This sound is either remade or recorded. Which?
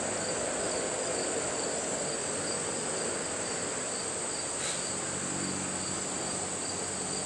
recorded